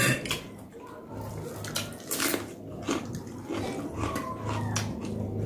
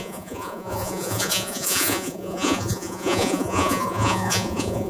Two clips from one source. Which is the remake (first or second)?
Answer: second